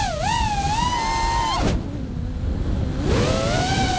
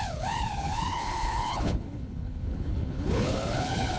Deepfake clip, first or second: second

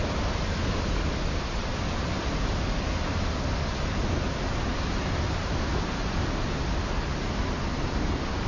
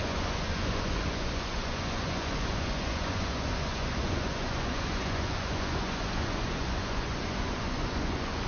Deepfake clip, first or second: second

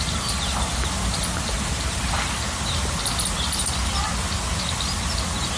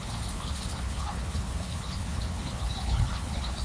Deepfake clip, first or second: second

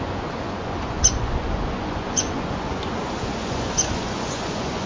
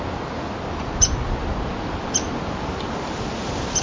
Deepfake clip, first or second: first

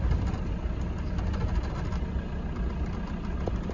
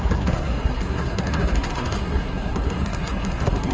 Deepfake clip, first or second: second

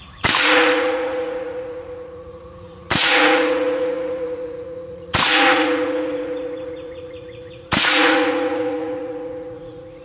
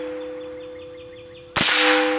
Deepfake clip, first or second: first